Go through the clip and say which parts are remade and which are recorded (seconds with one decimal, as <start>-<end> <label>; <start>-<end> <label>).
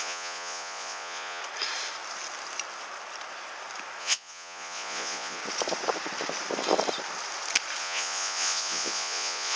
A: 0.0-1.4 remade; 1.4-4.0 recorded; 4.0-5.4 remade; 5.4-7.8 recorded; 7.8-9.6 remade